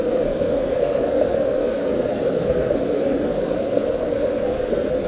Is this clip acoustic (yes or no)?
no